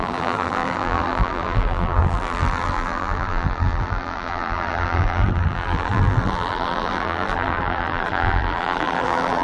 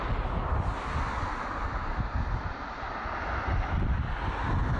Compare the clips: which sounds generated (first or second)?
first